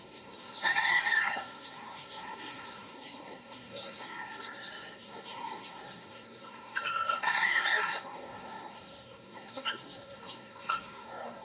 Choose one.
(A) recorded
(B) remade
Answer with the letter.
B